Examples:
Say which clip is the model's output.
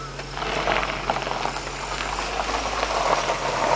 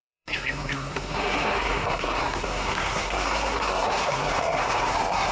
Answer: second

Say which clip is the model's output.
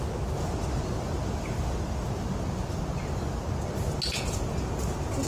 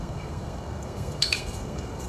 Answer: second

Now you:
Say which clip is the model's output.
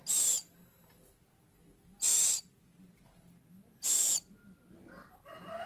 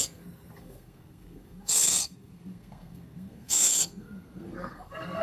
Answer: second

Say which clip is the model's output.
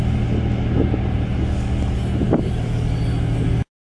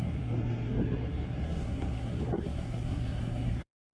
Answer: second